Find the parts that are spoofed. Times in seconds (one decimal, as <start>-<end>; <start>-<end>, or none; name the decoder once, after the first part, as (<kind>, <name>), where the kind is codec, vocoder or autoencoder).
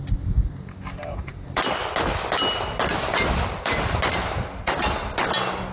none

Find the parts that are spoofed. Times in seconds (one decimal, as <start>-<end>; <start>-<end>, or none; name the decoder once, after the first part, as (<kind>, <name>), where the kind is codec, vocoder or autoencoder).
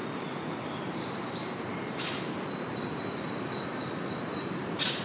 1.1-1.7 (vocoder, BigVGAN v2); 3.0-3.7; 4.4-5.0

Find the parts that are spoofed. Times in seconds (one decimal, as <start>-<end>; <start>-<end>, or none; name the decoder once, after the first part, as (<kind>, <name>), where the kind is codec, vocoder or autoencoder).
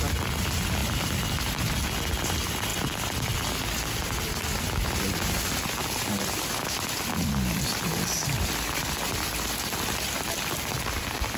none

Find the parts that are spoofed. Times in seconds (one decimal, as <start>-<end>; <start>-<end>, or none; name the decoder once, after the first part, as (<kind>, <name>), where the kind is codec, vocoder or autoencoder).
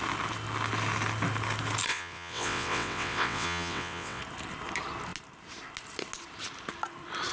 1.9-4.2 (vocoder, WaveNeXt)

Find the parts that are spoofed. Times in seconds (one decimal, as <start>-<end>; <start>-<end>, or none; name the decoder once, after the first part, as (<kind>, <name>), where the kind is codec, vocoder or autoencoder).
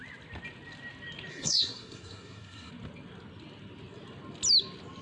1.3-2.7 (codec, SNAC)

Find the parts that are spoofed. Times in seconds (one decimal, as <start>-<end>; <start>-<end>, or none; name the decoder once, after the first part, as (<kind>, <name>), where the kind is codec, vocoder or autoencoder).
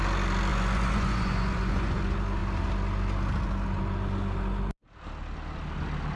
0.5-2.0 (vocoder, Vocos)